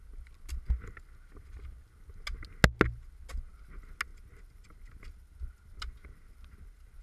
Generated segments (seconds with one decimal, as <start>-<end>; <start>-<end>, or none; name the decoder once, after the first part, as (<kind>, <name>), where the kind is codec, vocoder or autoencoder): none